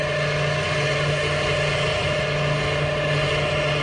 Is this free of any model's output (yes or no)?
yes